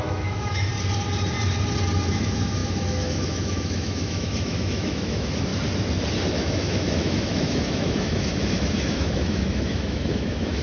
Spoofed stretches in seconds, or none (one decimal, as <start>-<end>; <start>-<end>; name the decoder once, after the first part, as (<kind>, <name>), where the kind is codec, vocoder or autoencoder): 0.0-0.7 (autoencoder, DAC-VAE); 2.1-5.5; 6.3-10.6